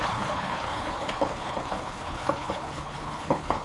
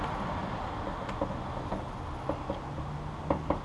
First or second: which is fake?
first